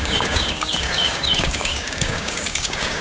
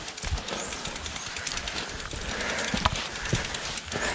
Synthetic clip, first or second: first